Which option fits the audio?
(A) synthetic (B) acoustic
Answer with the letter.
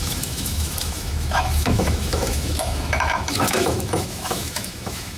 A